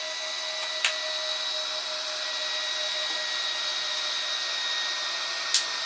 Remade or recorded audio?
recorded